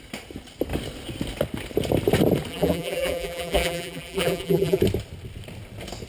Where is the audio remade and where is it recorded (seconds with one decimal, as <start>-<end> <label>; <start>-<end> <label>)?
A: 0.0-2.5 recorded; 2.5-4.8 remade; 4.8-6.1 recorded